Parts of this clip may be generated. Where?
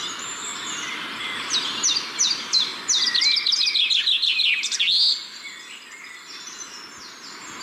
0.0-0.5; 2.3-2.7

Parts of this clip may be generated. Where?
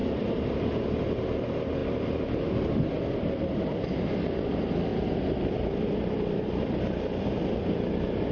0.0-0.6; 4.9-6.7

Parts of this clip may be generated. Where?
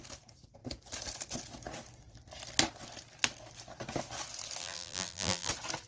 4.6-5.5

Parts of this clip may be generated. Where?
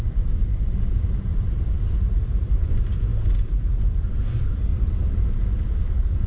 1.3-2.7; 4.7-6.3